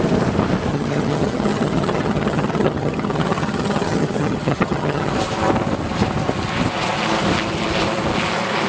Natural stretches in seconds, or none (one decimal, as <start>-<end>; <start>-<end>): 0.0-0.7; 5.1-8.7